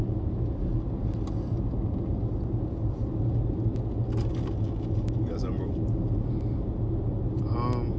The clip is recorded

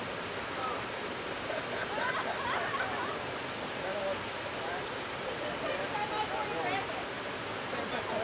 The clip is recorded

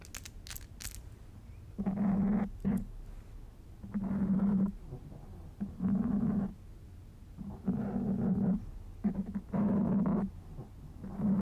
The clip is recorded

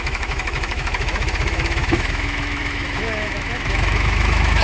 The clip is remade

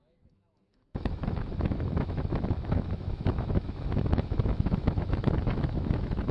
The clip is remade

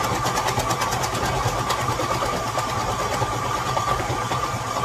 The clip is recorded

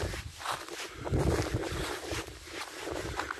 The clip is recorded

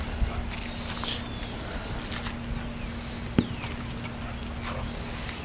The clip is recorded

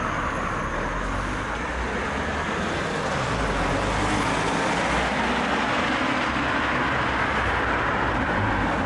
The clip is recorded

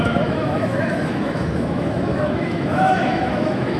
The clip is remade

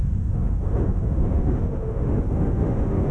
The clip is remade